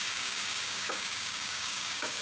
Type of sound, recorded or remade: remade